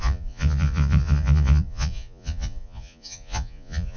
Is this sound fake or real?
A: fake